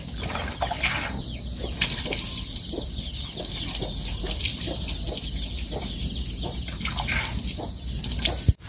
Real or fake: real